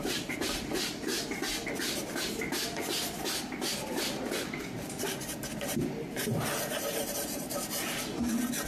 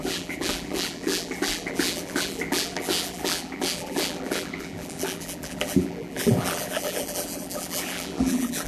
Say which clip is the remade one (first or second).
second